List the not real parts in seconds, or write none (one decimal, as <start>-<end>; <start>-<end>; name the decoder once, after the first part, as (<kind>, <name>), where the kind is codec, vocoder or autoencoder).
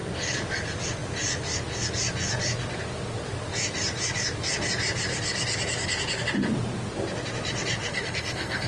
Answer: 7.9-8.7 (codec, SNAC)